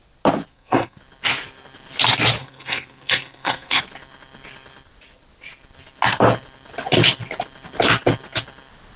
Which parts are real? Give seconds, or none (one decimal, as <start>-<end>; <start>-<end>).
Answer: 0.0-0.5; 1.0-2.4; 3.8-9.0